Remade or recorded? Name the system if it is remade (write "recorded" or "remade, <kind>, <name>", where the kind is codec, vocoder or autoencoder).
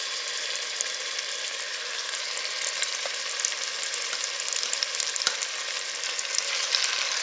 recorded